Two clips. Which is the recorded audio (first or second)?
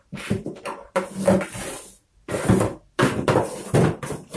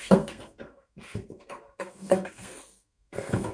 first